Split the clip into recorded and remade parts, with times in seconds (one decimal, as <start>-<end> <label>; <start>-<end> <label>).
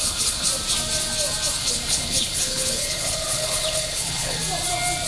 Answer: 0.0-0.5 remade; 0.5-1.6 recorded; 1.6-4.4 remade; 4.4-5.1 recorded